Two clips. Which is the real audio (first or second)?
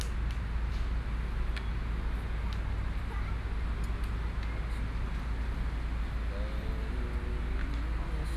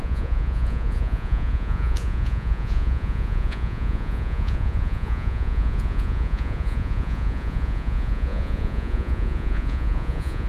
first